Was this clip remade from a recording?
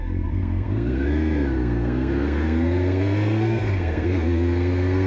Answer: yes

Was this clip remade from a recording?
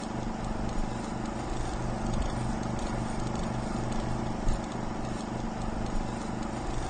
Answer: no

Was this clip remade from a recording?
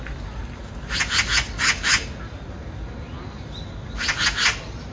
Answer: no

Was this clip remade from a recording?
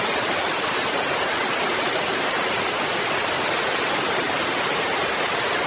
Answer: no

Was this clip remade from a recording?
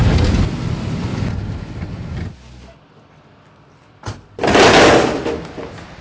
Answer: no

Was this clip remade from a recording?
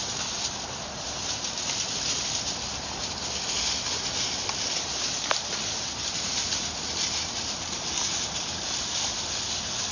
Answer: no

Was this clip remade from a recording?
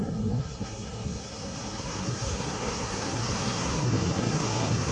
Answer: yes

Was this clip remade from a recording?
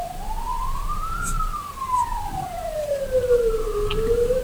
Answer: yes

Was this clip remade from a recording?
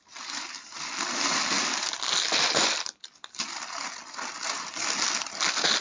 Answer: no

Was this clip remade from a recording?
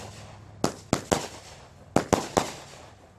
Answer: no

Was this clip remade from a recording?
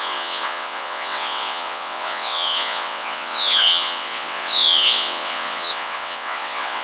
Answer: yes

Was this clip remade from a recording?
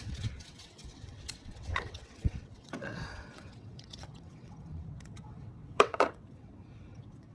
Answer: yes